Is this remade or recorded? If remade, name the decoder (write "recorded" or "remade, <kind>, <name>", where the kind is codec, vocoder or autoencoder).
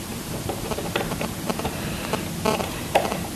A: remade, vocoder, BigVGAN v2